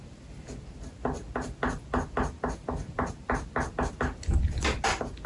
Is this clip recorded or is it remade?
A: recorded